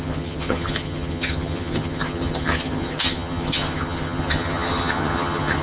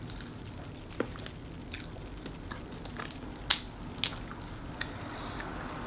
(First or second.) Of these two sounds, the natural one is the second